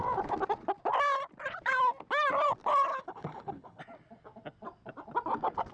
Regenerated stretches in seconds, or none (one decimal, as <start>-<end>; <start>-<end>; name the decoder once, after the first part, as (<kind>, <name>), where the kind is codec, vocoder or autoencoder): 2.9-3.8 (codec, HILCodec)